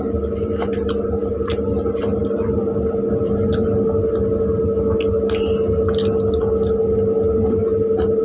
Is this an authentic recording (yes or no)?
yes